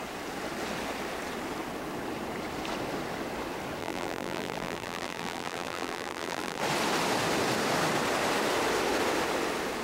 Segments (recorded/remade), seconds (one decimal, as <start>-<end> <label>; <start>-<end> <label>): 0.0-3.8 recorded; 3.8-6.6 remade; 6.6-9.8 recorded